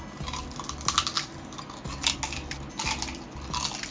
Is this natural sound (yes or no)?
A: yes